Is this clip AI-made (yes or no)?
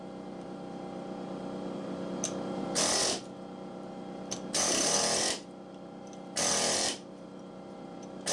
yes